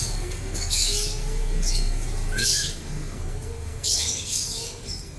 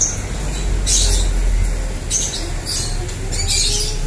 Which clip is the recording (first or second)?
second